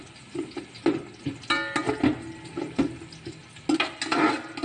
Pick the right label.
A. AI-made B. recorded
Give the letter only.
B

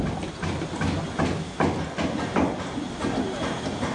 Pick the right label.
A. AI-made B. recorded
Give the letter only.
B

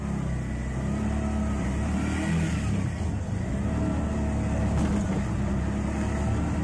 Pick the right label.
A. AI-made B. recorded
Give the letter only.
B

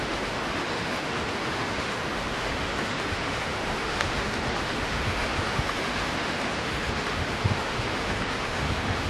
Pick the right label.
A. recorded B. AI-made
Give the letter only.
B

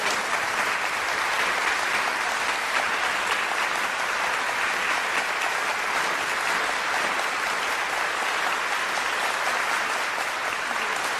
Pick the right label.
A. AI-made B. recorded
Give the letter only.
B